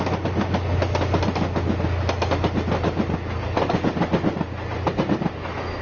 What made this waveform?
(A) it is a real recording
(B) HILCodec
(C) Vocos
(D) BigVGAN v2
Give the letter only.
A